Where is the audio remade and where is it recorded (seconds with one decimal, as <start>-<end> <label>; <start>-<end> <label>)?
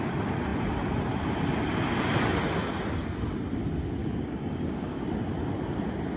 0.0-4.0 recorded; 4.0-5.0 remade; 5.0-6.2 recorded